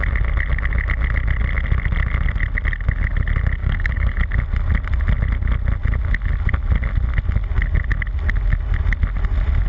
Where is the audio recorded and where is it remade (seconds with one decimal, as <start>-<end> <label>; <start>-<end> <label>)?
0.0-3.6 recorded; 3.6-4.2 remade; 4.2-9.7 recorded